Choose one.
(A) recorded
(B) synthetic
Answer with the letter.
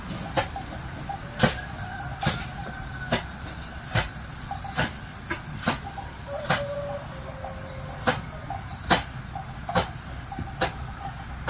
A